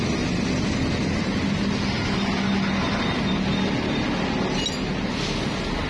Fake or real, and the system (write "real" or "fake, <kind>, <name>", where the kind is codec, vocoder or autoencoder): real